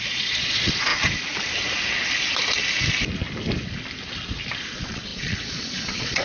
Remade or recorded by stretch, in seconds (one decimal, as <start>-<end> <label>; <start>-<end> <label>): 0.0-0.9 remade; 0.9-4.6 recorded; 4.6-6.2 remade